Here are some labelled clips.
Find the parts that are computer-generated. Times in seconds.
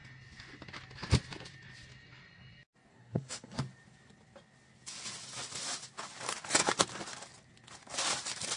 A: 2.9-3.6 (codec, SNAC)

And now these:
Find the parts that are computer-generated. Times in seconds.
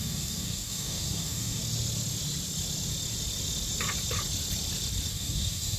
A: 0.0-1.6 (codec, DAC); 5.1-5.8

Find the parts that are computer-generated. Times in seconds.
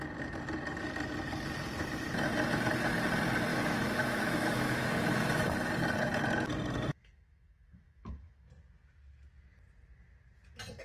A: 3.5-5.5 (autoencoder, DAC-VAE); 6.9-8.5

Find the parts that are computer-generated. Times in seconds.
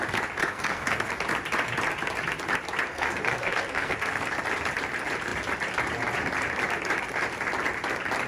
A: 0.4-1.1 (codec, SNAC); 2.9-4.3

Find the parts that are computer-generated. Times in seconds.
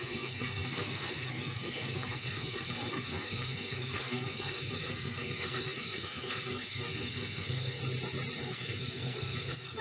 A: 0.0-7.8 (codec, SNAC); 8.4-9.8